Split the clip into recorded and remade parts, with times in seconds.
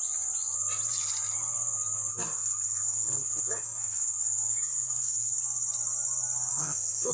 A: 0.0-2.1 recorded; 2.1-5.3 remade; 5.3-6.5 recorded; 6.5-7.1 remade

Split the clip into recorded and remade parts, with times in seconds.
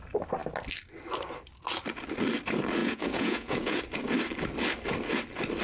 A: 0.0-2.8 recorded; 2.8-3.8 remade; 3.8-5.6 recorded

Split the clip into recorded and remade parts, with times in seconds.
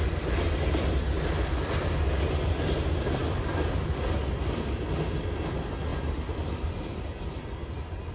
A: 0.0-5.9 recorded; 5.9-7.4 remade; 7.4-8.1 recorded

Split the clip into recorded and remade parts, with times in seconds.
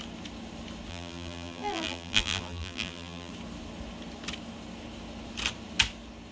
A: 0.0-0.9 recorded; 0.9-3.3 remade; 3.3-6.3 recorded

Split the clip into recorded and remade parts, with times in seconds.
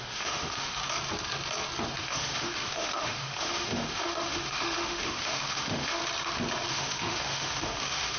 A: 0.0-0.8 remade; 0.8-2.0 recorded; 2.0-6.0 remade; 6.0-6.7 recorded; 6.7-8.2 remade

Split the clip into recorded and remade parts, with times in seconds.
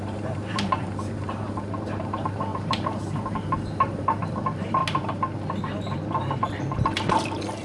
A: 0.0-4.8 remade; 4.8-5.6 recorded; 5.6-7.6 remade